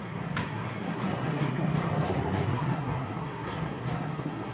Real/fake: fake